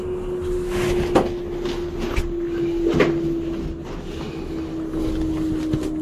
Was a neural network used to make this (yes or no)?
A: no